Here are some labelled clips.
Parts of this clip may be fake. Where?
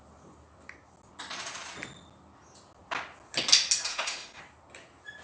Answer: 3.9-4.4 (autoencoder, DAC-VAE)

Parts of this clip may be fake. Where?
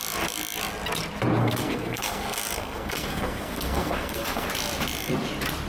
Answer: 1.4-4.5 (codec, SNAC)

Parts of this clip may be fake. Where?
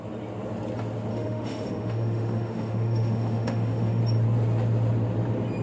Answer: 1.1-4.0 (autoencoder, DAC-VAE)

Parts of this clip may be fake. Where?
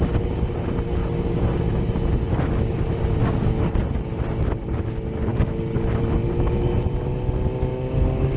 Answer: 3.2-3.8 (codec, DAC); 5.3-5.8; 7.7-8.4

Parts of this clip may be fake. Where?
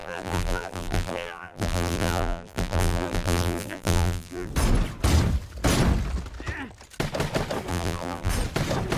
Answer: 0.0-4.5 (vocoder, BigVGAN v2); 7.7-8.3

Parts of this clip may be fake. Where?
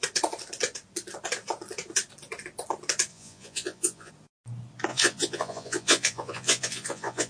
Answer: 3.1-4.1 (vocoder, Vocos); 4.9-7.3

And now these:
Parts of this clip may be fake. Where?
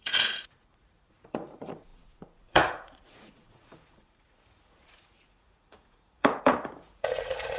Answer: 0.0-7.6 (vocoder, Vocos)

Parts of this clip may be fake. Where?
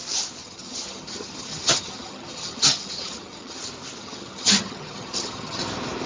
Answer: 0.4-3.6 (vocoder, HiFi-GAN); 4.0-5.6